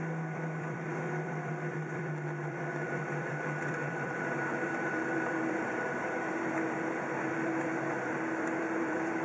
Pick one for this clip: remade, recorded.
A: remade